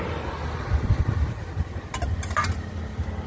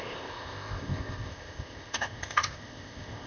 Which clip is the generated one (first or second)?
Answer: second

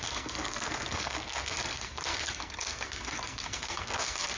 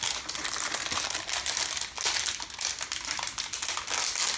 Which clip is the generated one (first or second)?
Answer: first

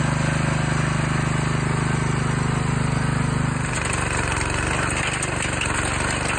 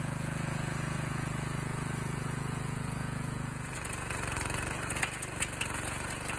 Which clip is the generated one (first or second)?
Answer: second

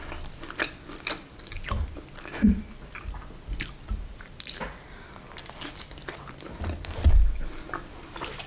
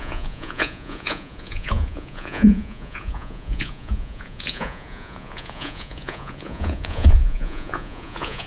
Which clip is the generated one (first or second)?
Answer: second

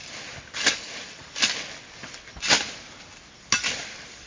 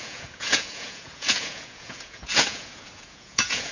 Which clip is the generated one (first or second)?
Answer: second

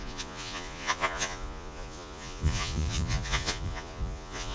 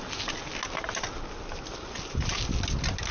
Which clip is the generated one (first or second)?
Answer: first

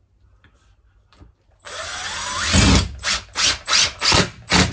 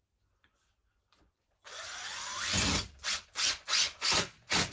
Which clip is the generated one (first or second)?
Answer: second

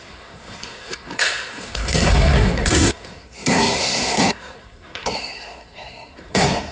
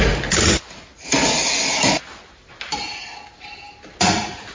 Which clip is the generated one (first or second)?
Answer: first